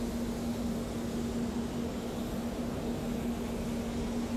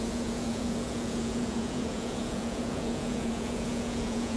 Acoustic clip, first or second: first